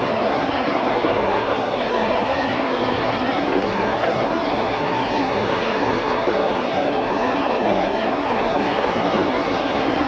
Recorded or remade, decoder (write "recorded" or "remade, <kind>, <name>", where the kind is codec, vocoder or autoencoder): remade, codec, SNAC